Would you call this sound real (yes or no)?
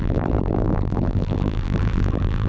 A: no